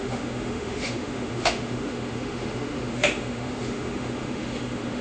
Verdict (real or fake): fake